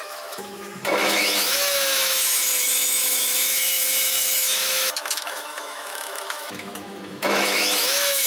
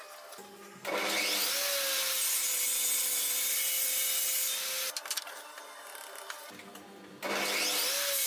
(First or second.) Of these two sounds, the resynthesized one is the first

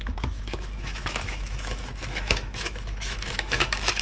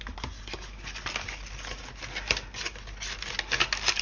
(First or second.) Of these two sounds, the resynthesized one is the first